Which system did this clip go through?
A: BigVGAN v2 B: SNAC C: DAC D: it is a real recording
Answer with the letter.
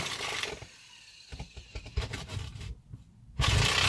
D